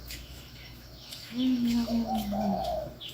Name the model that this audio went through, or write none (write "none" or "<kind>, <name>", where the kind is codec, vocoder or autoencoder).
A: autoencoder, DAC-VAE